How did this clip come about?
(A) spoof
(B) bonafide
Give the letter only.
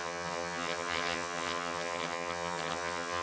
A